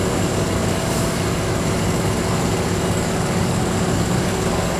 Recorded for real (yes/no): no